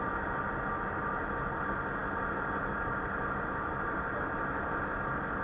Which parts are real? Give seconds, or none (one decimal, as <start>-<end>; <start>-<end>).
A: 0.0-5.4